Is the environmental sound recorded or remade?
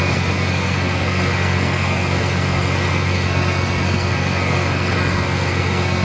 remade